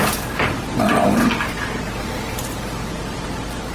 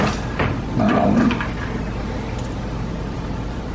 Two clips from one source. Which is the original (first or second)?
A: first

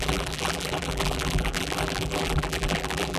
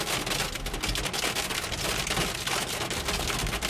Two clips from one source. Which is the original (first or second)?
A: second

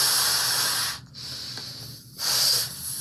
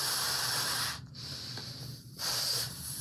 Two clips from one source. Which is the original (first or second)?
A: first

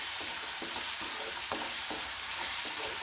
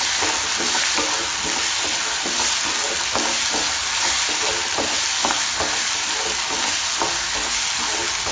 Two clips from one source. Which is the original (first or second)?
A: second